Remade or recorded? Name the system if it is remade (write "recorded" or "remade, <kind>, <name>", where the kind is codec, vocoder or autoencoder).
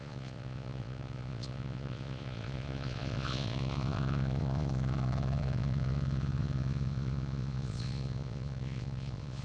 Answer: remade, vocoder, Vocos